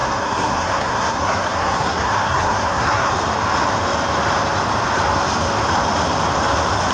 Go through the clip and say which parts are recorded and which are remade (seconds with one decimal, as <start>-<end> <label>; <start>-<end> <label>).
0.0-3.1 remade; 3.1-6.9 recorded